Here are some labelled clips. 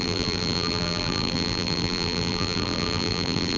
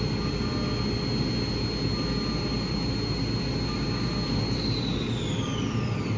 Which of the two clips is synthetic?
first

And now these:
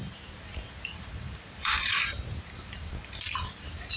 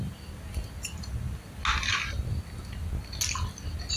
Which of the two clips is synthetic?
first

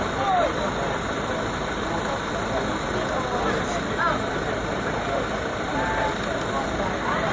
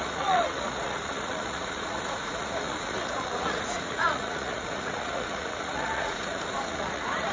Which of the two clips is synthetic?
second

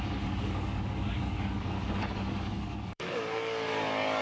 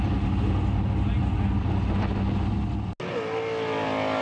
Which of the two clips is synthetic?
first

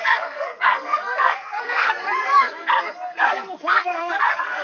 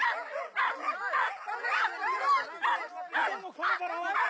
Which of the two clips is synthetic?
first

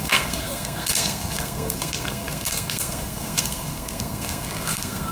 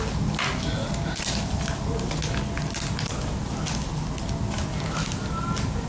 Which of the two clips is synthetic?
first